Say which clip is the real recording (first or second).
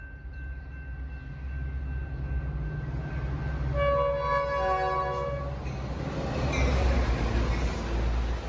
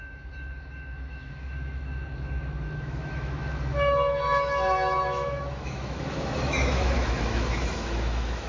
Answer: first